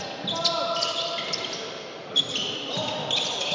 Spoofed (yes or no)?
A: no